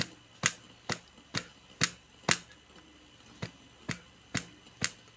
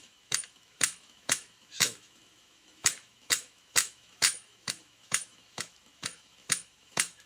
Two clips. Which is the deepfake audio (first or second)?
second